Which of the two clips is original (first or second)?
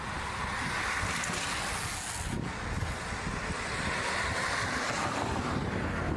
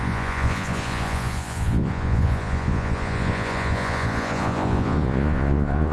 first